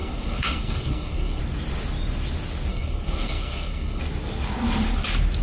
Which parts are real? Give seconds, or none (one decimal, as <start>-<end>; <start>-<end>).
1.4-2.7; 4.0-5.4